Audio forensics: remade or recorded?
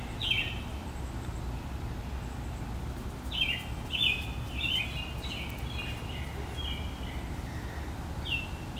recorded